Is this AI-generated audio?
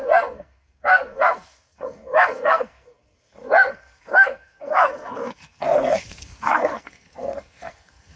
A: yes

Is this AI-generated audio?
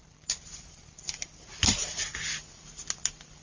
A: no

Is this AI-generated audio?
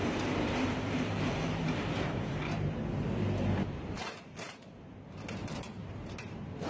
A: yes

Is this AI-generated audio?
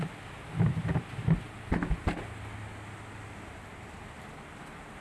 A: no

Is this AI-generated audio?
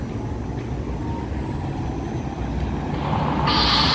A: no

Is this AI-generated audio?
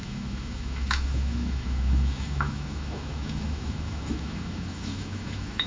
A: yes